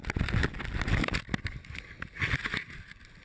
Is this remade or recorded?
recorded